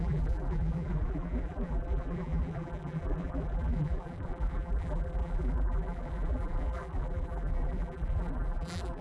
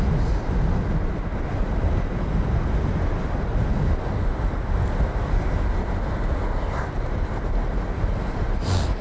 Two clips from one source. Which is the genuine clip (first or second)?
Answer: second